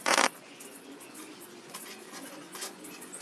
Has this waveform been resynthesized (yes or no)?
yes